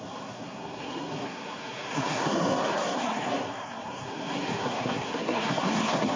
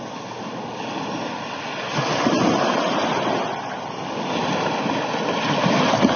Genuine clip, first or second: second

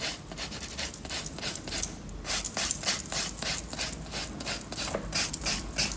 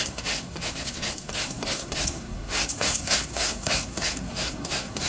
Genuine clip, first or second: first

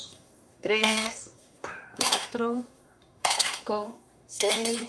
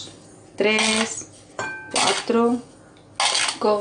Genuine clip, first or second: second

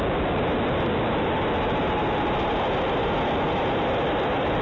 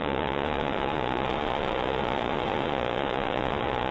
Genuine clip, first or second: first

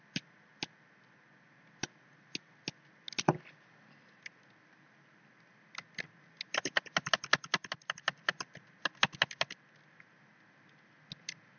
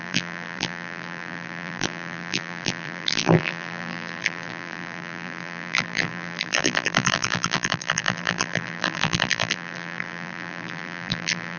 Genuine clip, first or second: first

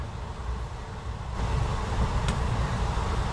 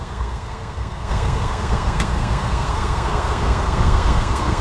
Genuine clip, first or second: first